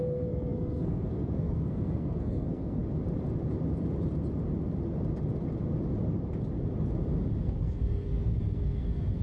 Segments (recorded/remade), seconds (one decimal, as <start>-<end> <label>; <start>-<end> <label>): 0.0-2.8 remade; 2.8-7.4 recorded; 7.4-9.2 remade